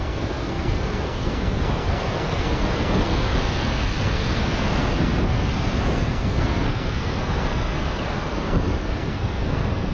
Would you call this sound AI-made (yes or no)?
yes